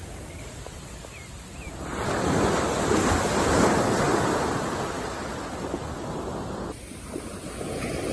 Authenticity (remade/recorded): recorded